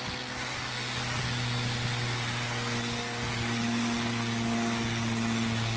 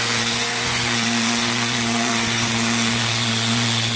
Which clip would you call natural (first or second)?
first